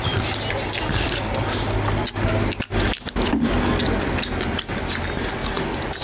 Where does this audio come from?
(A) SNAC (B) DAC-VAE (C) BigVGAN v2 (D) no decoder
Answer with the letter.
D